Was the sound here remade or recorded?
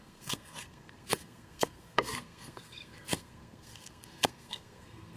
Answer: remade